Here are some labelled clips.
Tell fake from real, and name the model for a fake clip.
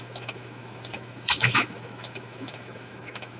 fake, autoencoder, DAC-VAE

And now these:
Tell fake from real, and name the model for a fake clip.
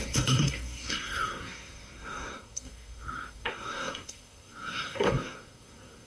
fake, codec, SNAC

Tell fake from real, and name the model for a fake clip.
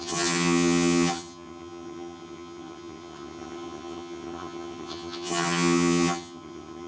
fake, vocoder, HiFi-GAN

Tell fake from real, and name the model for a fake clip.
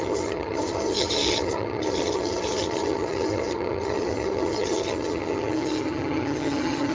fake, vocoder, HiFi-GAN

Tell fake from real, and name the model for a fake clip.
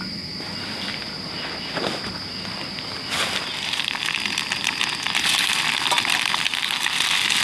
real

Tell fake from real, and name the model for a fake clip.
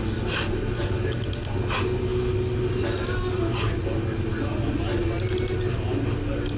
real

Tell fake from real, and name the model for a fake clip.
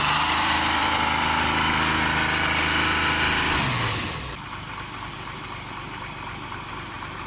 fake, vocoder, BigVGAN v2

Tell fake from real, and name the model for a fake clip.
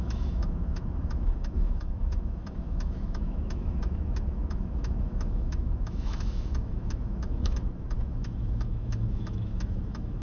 fake, autoencoder, DAC-VAE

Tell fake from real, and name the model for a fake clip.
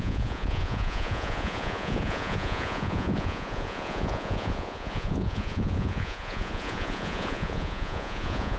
fake, vocoder, Vocos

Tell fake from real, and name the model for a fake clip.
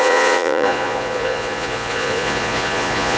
fake, vocoder, Vocos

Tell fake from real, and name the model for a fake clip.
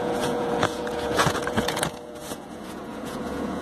fake, vocoder, Vocos